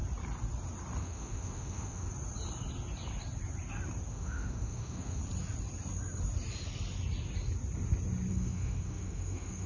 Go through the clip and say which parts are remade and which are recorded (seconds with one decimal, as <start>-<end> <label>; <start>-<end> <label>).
0.0-1.0 recorded; 1.0-2.1 remade; 2.1-4.1 recorded; 4.1-5.2 remade; 5.2-8.3 recorded; 8.3-9.7 remade